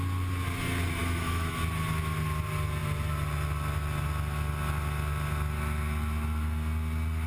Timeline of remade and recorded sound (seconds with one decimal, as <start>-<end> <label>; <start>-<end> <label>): 0.0-1.0 recorded; 1.0-1.5 remade; 1.5-7.3 recorded